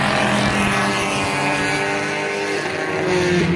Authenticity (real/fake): real